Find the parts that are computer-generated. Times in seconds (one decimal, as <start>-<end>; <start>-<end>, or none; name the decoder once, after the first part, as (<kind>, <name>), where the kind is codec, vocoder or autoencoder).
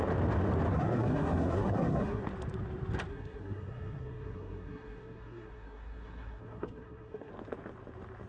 0.7-2.2 (codec, SNAC); 3.1-7.3